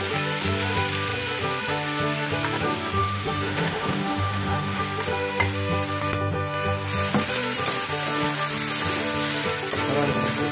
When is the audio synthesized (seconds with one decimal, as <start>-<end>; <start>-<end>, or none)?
3.0-4.8